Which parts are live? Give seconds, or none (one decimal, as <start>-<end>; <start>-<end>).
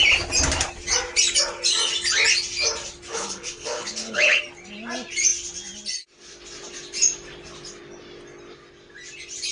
0.0-3.1; 4.4-9.5